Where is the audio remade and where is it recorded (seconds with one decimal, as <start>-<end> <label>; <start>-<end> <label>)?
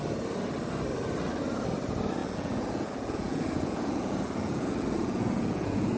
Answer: 0.0-2.2 recorded; 2.2-6.0 remade